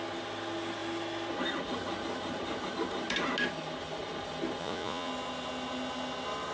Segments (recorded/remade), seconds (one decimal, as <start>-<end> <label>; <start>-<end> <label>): 0.0-4.6 recorded; 4.6-5.1 remade; 5.1-6.5 recorded